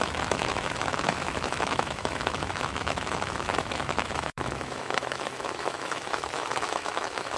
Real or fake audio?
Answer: fake